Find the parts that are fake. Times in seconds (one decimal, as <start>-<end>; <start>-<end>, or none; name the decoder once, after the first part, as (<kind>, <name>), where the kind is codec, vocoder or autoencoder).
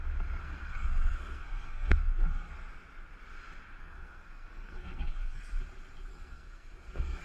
0.4-2.5 (codec, SNAC); 3.8-5.4; 6.1-7.2